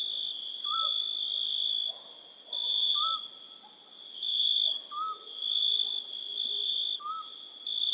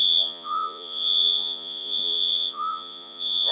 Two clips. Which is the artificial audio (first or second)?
second